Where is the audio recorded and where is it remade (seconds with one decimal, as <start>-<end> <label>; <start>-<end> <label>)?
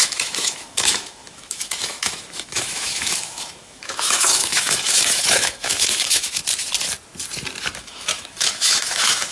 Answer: 0.0-6.4 remade; 6.4-7.8 recorded; 7.8-9.3 remade